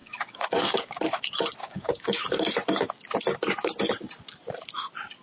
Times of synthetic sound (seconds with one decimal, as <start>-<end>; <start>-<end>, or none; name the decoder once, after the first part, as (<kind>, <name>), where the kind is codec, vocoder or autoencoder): 0.0-1.0 (codec, DAC); 1.6-2.5